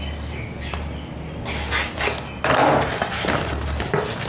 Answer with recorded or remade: recorded